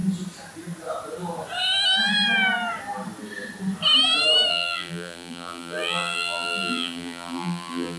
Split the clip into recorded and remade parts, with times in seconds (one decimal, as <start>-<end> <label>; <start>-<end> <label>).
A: 0.0-4.5 recorded; 4.5-8.0 remade